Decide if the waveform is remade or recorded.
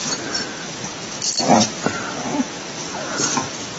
recorded